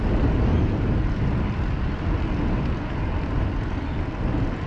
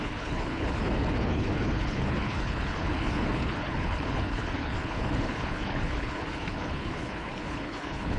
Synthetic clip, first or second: second